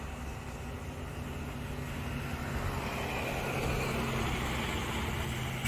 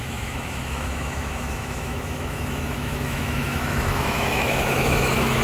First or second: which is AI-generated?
second